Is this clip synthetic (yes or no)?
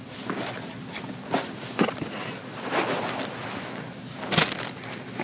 no